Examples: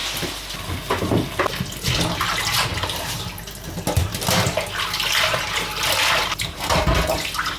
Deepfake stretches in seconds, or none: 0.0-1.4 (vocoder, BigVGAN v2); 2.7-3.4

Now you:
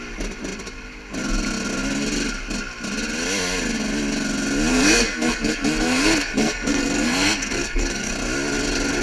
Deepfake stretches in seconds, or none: 4.7-8.1 (codec, SNAC)

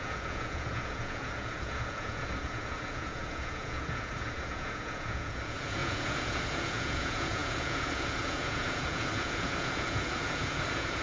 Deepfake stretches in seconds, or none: 0.0-11.0 (vocoder, Vocos)

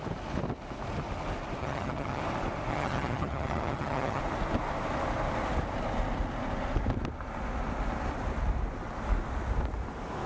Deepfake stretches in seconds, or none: 1.6-2.2 (vocoder, HiFi-GAN); 2.7-4.2

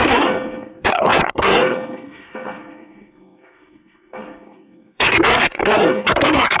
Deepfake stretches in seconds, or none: 0.0-6.6 (codec, SNAC)

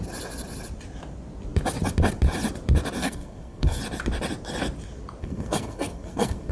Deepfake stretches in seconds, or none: 3.0-3.8 (codec, SNAC); 5.2-6.5